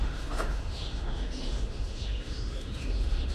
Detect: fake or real fake